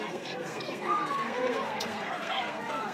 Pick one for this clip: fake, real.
fake